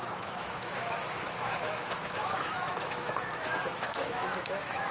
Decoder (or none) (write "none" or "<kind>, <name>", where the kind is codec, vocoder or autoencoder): autoencoder, DAC-VAE